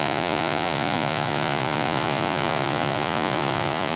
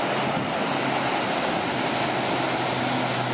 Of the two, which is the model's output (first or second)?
first